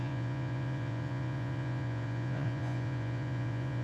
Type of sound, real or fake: fake